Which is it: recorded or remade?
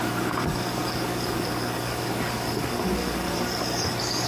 remade